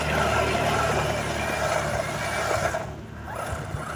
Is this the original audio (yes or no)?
yes